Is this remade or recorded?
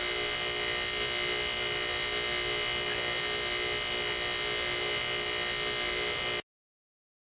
recorded